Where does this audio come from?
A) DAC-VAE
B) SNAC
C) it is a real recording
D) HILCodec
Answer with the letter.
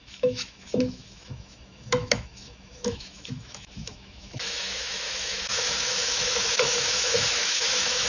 A